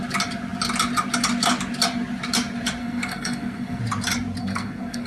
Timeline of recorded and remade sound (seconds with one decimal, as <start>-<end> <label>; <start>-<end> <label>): 0.0-2.8 recorded; 2.8-3.8 remade; 3.8-4.4 recorded; 4.4-5.1 remade